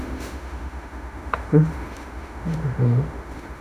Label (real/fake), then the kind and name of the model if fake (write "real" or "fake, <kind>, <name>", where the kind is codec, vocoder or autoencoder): fake, autoencoder, DAC-VAE